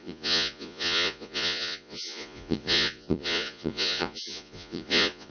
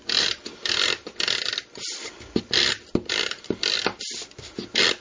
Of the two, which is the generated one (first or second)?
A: first